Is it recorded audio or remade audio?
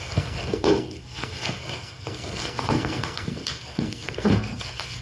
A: remade